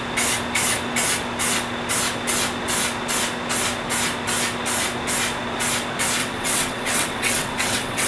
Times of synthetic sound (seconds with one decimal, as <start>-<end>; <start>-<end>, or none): 6.2-8.1

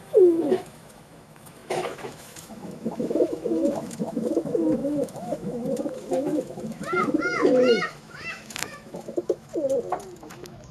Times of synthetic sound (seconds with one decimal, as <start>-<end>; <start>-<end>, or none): 0.0-9.5; 10.2-10.7